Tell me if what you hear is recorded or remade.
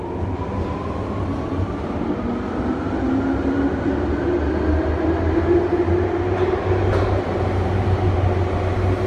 recorded